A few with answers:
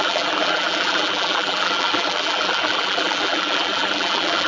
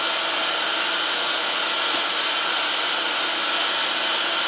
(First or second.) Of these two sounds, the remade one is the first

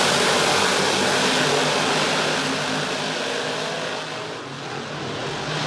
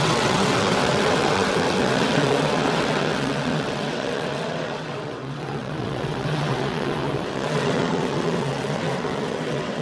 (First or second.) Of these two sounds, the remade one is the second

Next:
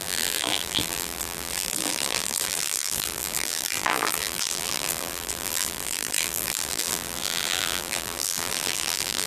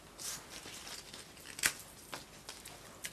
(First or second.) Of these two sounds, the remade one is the first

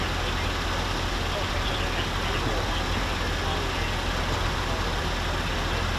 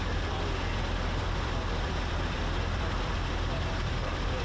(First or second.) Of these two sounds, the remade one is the second